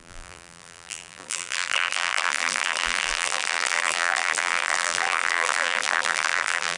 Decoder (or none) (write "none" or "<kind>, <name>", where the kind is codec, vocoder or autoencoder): vocoder, BigVGAN v2